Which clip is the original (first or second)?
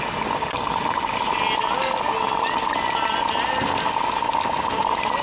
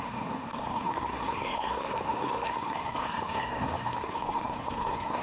first